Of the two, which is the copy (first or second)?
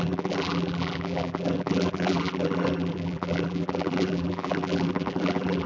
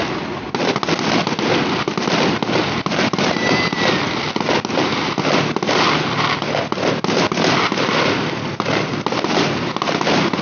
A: first